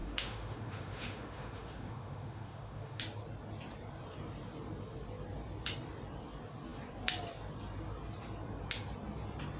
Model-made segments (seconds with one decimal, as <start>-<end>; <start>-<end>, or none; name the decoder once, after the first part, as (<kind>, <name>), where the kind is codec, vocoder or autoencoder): 0.0-3.0 (autoencoder, DAC-VAE)